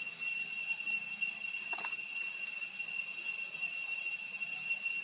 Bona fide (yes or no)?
yes